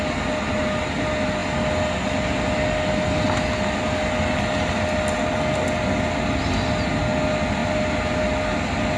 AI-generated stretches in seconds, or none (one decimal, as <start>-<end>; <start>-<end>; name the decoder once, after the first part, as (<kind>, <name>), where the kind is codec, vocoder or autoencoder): none